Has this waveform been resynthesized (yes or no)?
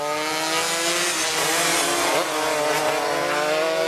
no